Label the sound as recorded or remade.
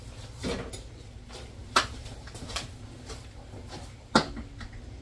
recorded